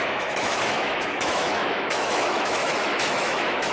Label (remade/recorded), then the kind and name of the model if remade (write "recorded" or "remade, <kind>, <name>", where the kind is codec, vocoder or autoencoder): remade, autoencoder, DAC-VAE